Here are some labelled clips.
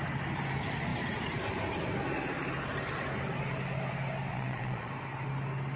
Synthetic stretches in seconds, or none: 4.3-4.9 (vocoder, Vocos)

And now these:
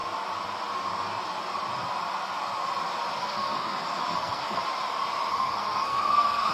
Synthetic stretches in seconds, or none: 3.2-4.6 (codec, SNAC); 5.3-6.5

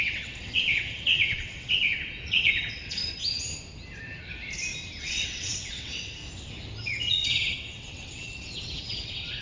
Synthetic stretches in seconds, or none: 0.0-3.0 (vocoder, WaveNeXt); 5.0-6.2; 6.8-9.4

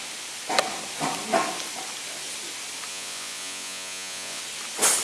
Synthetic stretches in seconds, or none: 2.9-4.4 (vocoder, Vocos)

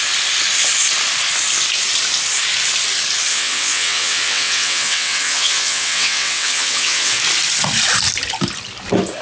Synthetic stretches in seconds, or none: 3.3-7.2 (vocoder, WaveNeXt)

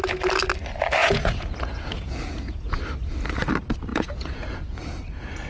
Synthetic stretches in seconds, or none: 1.0-2.8 (vocoder, Vocos); 3.9-4.8